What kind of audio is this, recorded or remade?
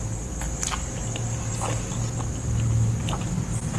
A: recorded